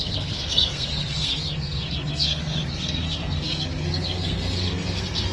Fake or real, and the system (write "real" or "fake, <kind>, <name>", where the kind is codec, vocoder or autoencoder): fake, codec, SNAC